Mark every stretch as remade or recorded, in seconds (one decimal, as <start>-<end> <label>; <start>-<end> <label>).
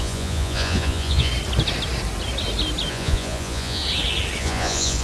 0.0-1.3 remade; 1.3-2.9 recorded; 2.9-3.8 remade; 3.8-4.4 recorded; 4.4-5.0 remade